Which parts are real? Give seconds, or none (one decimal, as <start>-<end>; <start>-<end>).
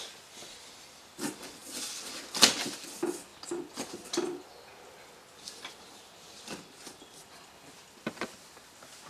0.0-9.1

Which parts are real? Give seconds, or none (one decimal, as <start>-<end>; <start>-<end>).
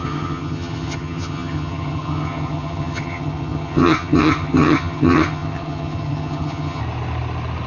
6.8-7.7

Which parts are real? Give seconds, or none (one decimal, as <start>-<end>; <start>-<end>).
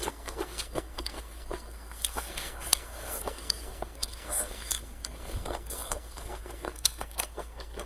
none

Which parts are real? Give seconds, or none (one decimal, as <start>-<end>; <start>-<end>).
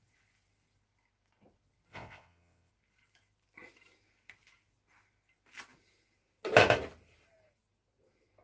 0.0-1.9; 2.7-8.4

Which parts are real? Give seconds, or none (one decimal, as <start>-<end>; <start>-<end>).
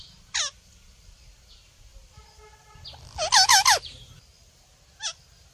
0.0-5.5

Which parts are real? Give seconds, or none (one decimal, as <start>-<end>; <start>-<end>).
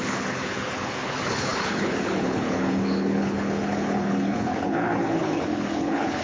none